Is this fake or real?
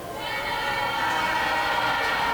real